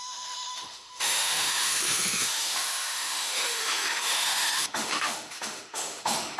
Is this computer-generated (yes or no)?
yes